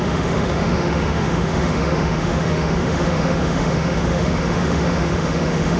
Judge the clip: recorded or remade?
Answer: remade